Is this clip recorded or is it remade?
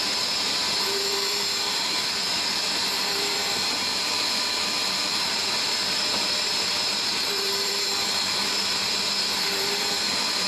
remade